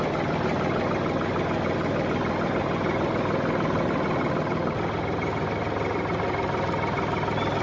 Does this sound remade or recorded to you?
recorded